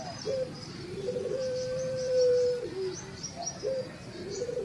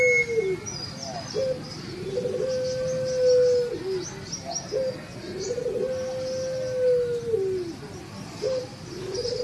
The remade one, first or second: first